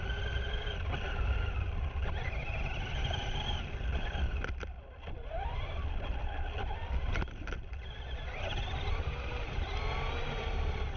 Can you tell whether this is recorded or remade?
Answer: recorded